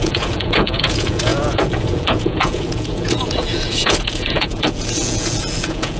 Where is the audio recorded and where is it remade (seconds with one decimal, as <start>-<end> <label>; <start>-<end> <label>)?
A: 0.0-6.0 remade